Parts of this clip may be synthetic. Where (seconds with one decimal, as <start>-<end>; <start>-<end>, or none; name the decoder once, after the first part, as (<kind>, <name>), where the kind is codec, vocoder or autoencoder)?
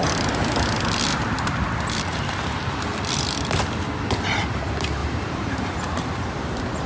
1.1-1.6 (vocoder, BigVGAN v2); 5.0-6.9